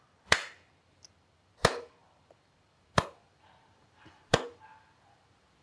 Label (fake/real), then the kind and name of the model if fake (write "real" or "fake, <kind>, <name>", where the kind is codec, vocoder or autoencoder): fake, vocoder, BigVGAN v2